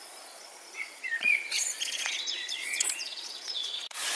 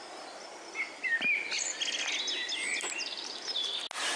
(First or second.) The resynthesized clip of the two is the first